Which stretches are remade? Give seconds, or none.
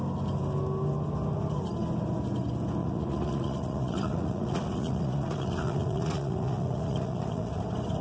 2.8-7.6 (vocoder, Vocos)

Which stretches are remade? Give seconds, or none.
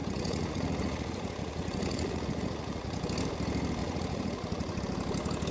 0.0-3.0 (vocoder, Vocos); 3.8-4.8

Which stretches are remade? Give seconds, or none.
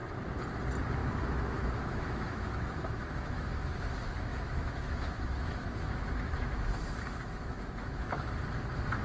1.0-3.6 (autoencoder, DAC-VAE); 4.3-8.3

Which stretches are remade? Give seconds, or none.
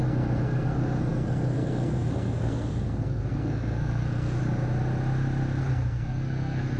0.0-4.4 (codec, SNAC); 5.6-6.8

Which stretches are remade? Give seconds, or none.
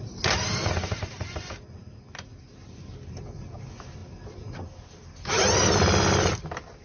none